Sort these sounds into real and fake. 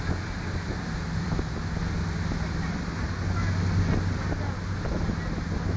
real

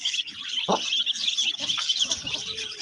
real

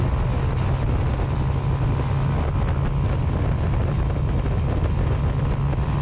real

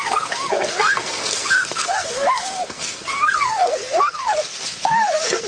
fake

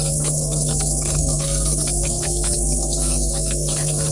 fake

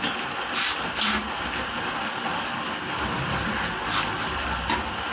real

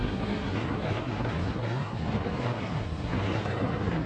fake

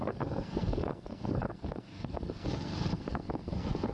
fake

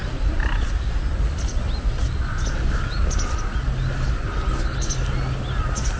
real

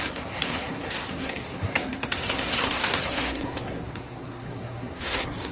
fake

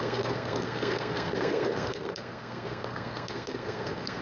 fake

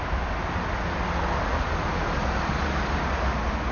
real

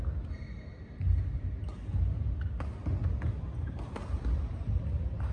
real